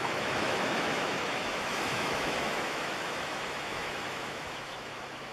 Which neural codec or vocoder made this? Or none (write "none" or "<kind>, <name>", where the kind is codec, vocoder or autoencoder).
autoencoder, DAC-VAE